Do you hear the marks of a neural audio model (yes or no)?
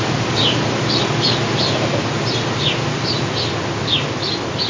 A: no